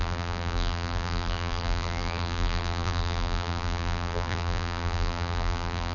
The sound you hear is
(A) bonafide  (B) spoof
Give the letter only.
B